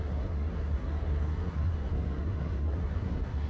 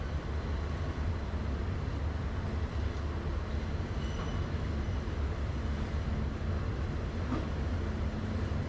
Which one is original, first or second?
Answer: second